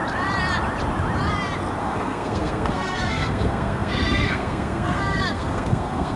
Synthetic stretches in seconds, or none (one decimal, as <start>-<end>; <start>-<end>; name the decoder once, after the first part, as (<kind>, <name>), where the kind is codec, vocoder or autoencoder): 1.8-6.2 (codec, SNAC)

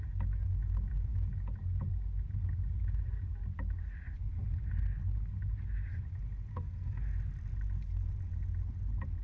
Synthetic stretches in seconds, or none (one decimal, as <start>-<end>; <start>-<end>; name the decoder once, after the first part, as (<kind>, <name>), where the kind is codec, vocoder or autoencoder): 6.5-7.0 (codec, SNAC)

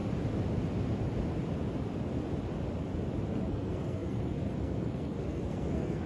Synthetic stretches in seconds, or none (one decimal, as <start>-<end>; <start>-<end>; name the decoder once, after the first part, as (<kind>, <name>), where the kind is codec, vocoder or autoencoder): 3.3-6.1 (codec, SNAC)